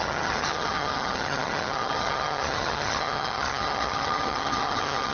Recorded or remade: remade